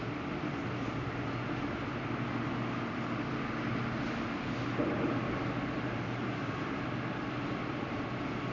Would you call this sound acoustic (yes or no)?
yes